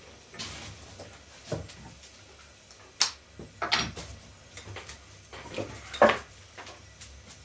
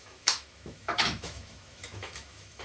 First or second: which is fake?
second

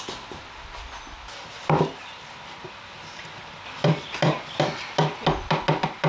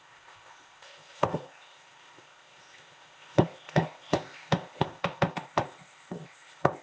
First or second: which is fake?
second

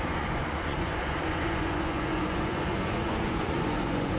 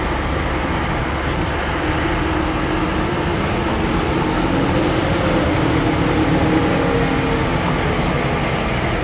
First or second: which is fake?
first